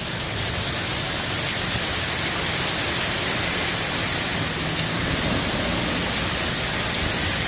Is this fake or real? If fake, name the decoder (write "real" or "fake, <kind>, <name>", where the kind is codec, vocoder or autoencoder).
real